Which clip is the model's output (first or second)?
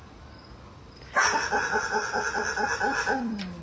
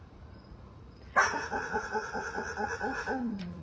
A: second